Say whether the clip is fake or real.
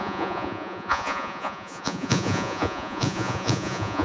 fake